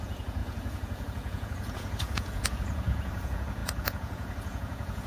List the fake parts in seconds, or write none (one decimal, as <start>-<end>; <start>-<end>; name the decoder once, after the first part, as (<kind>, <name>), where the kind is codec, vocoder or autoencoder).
0.0-5.1 (vocoder, Vocos)